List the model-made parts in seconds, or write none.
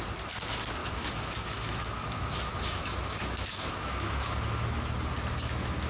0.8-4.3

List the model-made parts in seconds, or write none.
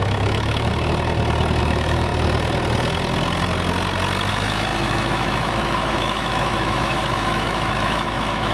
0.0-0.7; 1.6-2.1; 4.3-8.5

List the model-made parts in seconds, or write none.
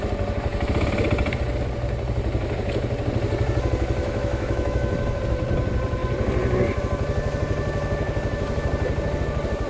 4.0-5.2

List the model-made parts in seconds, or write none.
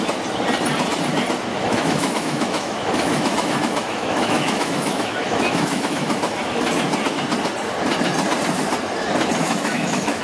1.5-6.6; 9.4-10.2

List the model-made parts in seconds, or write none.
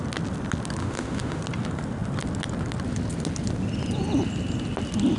0.8-1.4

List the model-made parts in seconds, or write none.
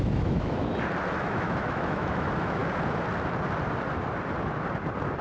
0.0-0.7; 1.2-2.6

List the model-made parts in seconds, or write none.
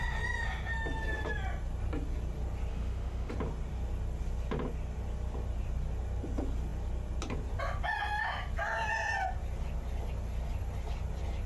2.7-3.3